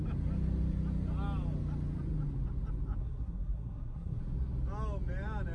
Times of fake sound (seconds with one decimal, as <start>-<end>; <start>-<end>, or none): 3.0-4.2